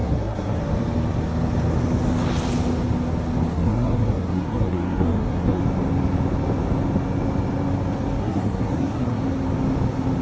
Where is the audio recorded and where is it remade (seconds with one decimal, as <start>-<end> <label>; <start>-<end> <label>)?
0.0-0.6 remade; 0.6-3.5 recorded; 3.5-5.6 remade; 5.6-8.2 recorded; 8.2-9.2 remade; 9.2-10.2 recorded